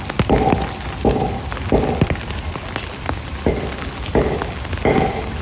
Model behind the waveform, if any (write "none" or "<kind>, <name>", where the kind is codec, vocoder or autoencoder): none